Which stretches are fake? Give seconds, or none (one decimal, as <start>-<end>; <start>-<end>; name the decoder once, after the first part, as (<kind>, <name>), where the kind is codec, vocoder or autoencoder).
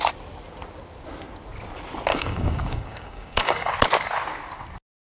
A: 2.1-3.7 (codec, DAC)